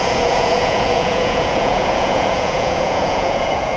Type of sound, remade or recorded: remade